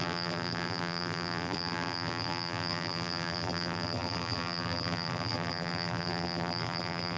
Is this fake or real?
fake